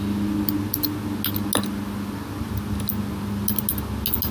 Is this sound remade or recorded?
recorded